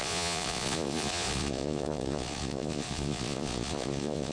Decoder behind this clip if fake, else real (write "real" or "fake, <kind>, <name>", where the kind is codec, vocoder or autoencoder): fake, vocoder, Vocos